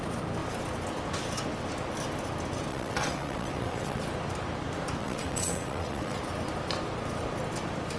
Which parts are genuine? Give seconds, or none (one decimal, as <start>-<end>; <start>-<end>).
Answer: 0.0-2.7; 4.0-5.0; 6.2-8.0